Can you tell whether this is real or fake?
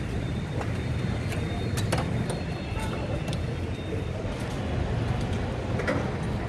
real